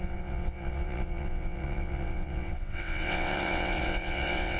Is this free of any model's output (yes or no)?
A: no